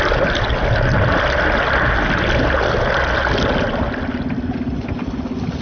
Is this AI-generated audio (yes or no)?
no